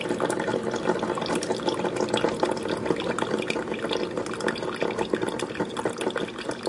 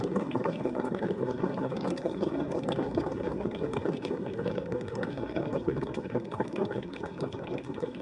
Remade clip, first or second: second